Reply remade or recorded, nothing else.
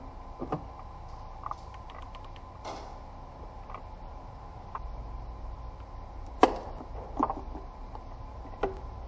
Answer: recorded